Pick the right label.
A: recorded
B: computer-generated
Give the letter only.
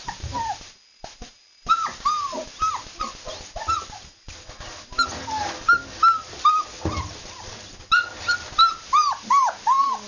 A